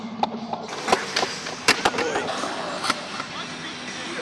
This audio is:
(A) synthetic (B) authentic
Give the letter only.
B